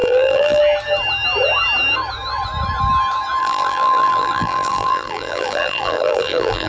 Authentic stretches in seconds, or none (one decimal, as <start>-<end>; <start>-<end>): 0.6-3.4